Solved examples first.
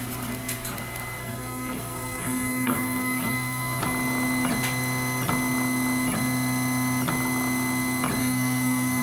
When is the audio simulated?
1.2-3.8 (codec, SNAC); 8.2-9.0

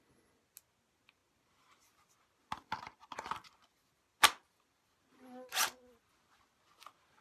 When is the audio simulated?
none

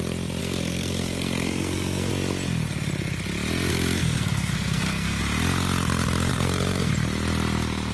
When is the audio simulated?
0.4-2.1 (codec, SNAC); 3.7-5.2; 6.3-6.9

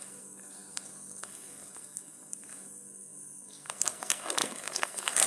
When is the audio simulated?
0.0-5.3 (codec, SNAC)

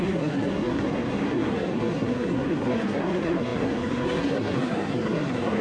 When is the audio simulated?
0.0-5.6 (codec, SNAC)